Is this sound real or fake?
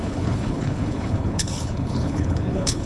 fake